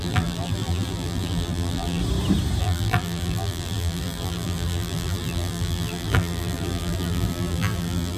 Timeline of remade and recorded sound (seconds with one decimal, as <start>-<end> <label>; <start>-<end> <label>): 0.0-2.0 remade; 2.0-2.6 recorded; 2.6-8.2 remade